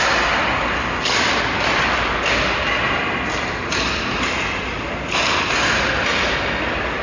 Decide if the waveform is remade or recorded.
recorded